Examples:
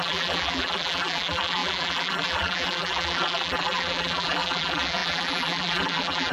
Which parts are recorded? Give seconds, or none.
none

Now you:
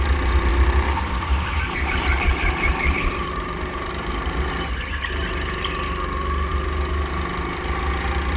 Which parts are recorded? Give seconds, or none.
0.0-0.5; 4.5-8.4

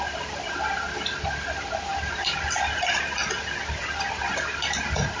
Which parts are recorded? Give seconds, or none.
0.0-5.2

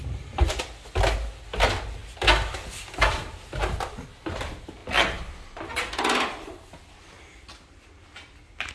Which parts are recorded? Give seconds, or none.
0.6-8.7

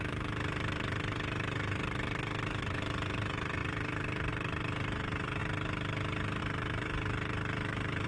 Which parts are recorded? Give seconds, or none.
5.4-6.4